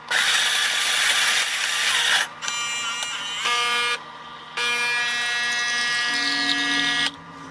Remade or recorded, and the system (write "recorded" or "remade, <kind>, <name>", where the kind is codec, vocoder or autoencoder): recorded